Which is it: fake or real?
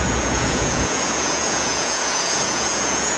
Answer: fake